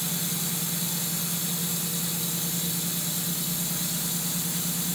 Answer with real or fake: real